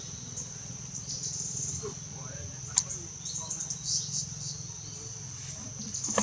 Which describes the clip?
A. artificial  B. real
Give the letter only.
B